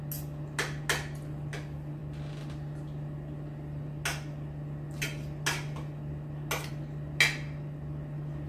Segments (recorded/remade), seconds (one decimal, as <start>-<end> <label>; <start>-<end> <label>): 0.0-8.5 recorded